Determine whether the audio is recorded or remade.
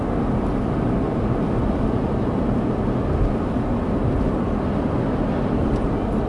recorded